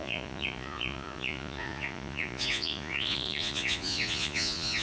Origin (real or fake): fake